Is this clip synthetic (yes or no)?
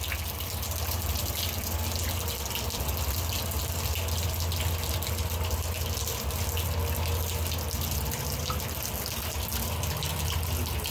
no